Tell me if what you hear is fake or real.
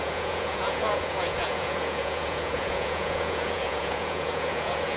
fake